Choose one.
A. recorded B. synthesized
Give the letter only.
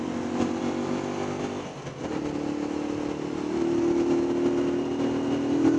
A